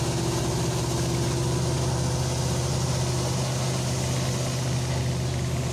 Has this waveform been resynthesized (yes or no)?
no